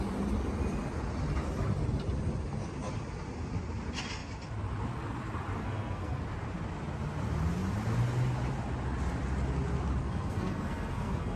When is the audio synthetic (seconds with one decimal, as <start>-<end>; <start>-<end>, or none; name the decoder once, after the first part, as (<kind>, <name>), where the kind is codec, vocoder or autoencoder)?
5.6-6.2 (codec, SNAC); 10.0-11.4